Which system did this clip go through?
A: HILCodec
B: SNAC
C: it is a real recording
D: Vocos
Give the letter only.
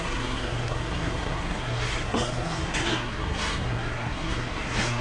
B